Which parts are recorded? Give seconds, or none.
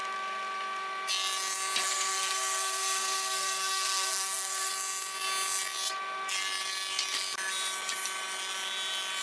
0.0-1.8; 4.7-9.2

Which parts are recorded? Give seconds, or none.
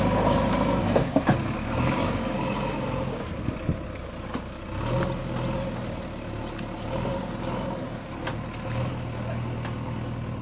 0.0-0.8; 3.5-10.4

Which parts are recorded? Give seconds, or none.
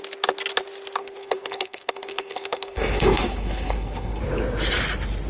0.0-1.0; 4.2-5.3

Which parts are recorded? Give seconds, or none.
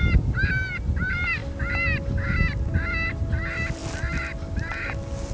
0.0-5.3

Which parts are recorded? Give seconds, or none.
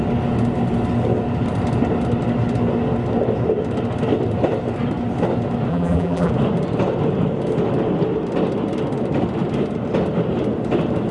0.0-5.7; 6.3-11.1